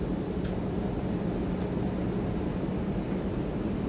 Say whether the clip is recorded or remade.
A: recorded